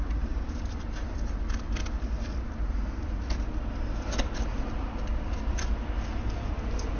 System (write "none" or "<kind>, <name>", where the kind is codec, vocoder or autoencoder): none